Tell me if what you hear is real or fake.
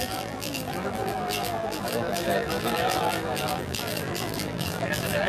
fake